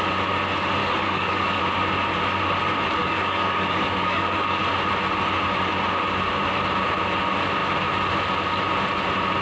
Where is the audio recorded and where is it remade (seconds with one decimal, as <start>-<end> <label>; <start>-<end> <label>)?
0.0-0.8 recorded; 0.8-1.6 remade; 1.6-3.0 recorded; 3.0-4.6 remade; 4.6-9.4 recorded